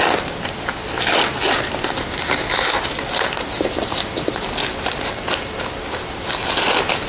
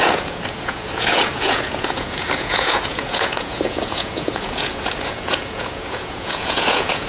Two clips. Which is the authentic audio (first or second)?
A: first